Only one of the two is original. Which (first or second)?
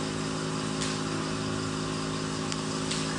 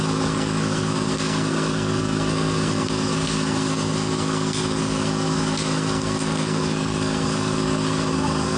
first